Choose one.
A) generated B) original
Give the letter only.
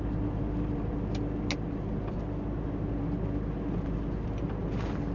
B